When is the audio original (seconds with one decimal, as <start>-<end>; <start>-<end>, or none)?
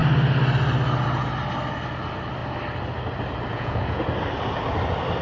0.0-3.5; 4.0-5.2